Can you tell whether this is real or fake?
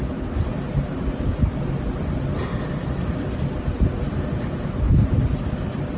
real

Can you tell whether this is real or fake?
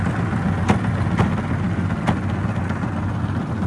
real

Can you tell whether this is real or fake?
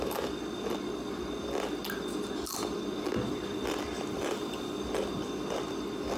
real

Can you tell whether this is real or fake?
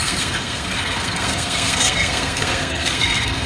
fake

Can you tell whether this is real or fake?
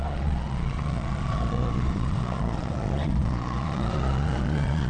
fake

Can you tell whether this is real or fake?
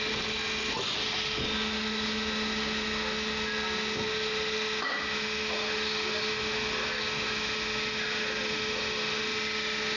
real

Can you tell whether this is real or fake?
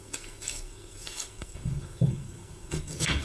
fake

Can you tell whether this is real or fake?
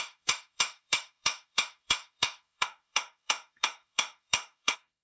fake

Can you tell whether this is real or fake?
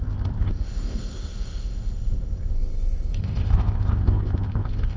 fake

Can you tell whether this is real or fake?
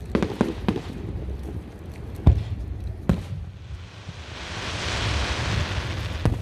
real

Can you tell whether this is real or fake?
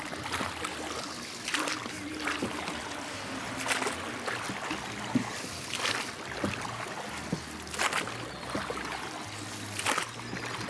real